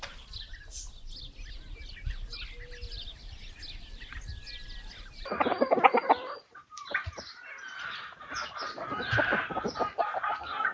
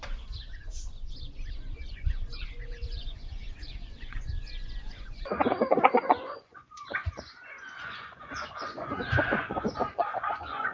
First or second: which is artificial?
second